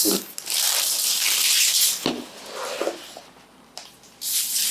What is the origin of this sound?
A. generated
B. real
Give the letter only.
B